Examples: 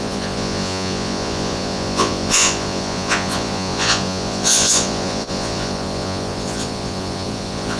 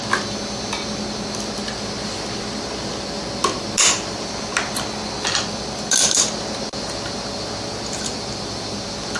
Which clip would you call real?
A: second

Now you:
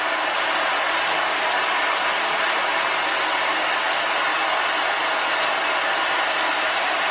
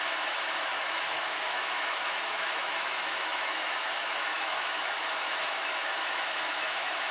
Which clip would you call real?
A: first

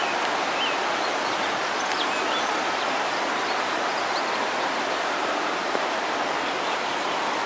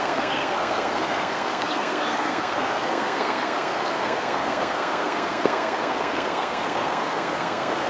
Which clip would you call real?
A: first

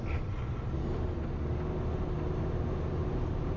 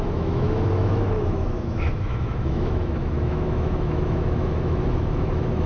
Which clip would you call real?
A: first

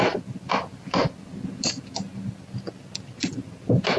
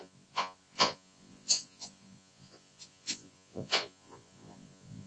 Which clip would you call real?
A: first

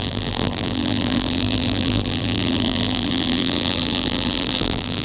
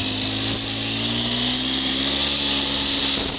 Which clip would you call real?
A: second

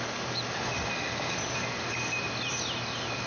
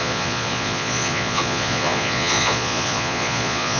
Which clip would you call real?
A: first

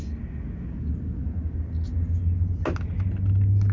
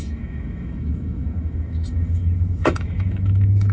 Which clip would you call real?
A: first